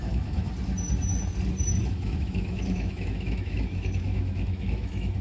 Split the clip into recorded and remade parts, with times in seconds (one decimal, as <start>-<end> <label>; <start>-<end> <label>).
0.0-0.5 remade; 0.5-1.9 recorded; 1.9-5.2 remade

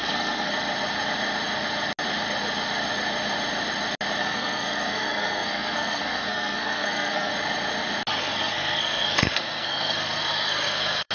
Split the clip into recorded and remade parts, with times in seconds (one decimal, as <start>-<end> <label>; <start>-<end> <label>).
0.0-0.5 remade; 0.5-4.2 recorded; 4.2-7.3 remade; 7.3-8.2 recorded; 8.2-11.1 remade

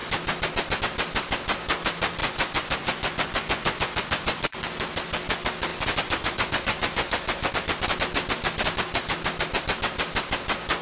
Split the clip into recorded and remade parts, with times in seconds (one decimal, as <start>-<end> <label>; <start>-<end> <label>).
0.0-2.2 recorded; 2.2-4.6 remade; 4.6-5.7 recorded; 5.7-7.5 remade; 7.5-10.8 recorded

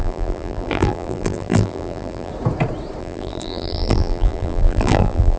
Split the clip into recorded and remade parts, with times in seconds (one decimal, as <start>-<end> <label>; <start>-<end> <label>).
0.0-2.3 remade; 2.3-3.0 recorded; 3.0-5.4 remade

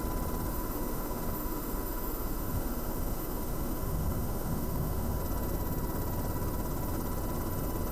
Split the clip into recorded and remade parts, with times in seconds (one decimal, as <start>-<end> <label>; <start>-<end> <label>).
0.0-0.5 recorded; 0.5-5.2 remade; 5.2-7.9 recorded

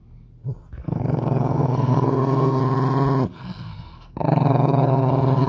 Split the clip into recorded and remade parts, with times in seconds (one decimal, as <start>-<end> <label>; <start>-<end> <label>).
0.0-0.8 recorded; 0.8-2.6 remade; 2.6-3.3 recorded; 3.3-5.5 remade